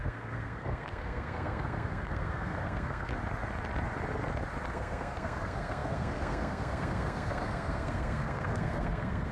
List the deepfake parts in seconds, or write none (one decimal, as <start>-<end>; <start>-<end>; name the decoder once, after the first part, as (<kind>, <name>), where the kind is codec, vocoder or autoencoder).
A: 0.0-3.1 (codec, SNAC); 4.7-9.3